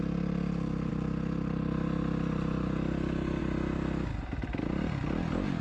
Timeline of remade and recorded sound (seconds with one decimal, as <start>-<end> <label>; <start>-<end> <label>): 0.0-5.6 recorded